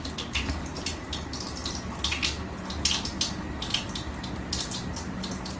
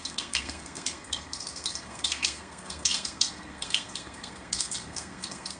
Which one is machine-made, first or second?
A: second